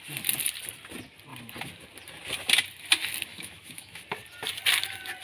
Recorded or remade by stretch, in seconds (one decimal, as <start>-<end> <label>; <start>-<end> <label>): 0.0-3.3 recorded; 3.3-4.0 remade; 4.0-5.2 recorded